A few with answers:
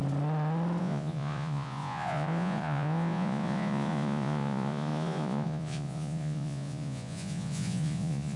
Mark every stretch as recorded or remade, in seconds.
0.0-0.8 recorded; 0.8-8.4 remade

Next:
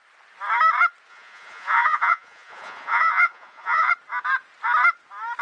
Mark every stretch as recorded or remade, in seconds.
0.0-1.1 recorded; 1.1-3.9 remade; 3.9-5.4 recorded

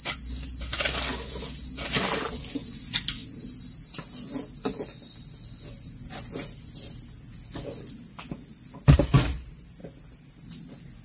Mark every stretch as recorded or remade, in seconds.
0.0-11.0 recorded

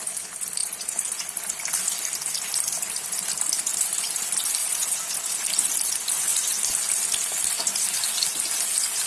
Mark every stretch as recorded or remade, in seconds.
0.0-0.6 recorded; 0.6-1.2 remade; 1.2-4.6 recorded; 4.6-5.2 remade; 5.2-9.1 recorded

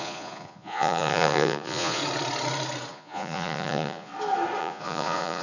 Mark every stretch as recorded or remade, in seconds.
0.0-2.0 remade; 2.0-2.9 recorded; 2.9-4.1 remade; 4.1-4.6 recorded; 4.6-5.4 remade